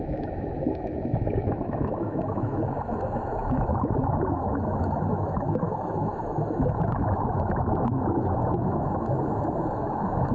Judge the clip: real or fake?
fake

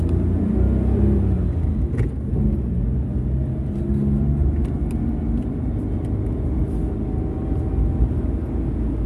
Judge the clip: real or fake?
real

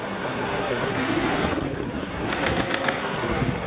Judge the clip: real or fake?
fake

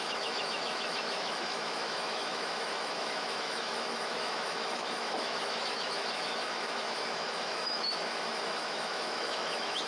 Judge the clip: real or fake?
fake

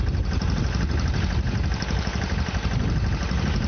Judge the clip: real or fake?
real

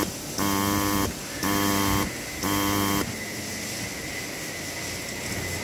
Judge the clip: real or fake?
real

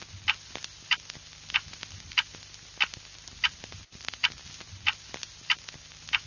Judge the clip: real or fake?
real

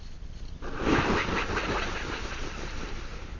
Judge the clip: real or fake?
real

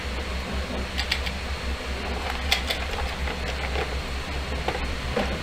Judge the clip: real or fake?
real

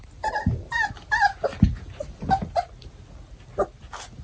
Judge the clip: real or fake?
real